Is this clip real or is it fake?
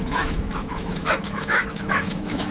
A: fake